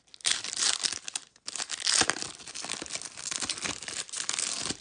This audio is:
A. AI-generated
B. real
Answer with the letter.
B